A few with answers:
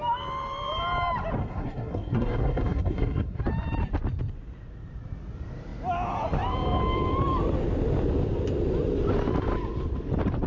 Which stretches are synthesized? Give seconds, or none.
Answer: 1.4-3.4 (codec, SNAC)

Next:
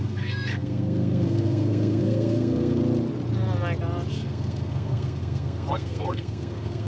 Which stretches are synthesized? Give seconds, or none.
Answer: 0.0-2.8 (codec, SNAC); 4.1-6.9

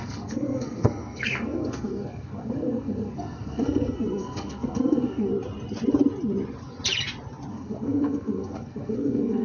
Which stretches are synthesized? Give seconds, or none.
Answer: 0.0-5.3 (codec, SNAC); 7.5-9.4